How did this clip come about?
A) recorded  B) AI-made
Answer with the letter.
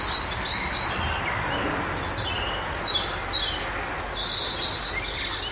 A